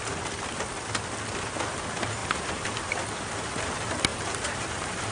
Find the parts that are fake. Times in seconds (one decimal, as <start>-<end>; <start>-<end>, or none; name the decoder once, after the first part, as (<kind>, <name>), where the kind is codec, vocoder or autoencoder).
2.2-2.9 (vocoder, BigVGAN v2); 4.1-5.1